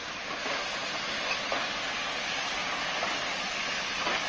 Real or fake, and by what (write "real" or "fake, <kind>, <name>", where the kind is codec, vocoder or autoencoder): real